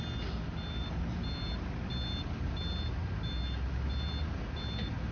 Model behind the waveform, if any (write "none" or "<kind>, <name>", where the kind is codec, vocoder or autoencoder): none